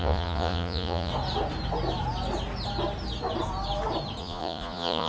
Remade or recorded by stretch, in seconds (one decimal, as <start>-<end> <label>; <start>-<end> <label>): 0.0-1.1 remade; 1.1-4.2 recorded; 4.2-5.1 remade